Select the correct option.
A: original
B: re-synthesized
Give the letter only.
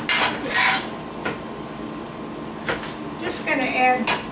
A